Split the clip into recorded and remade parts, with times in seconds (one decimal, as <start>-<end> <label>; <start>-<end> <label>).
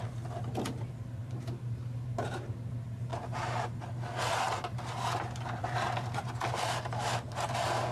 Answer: 0.0-1.2 recorded; 1.2-2.7 remade; 2.7-3.1 recorded; 3.1-3.8 remade; 3.8-7.9 recorded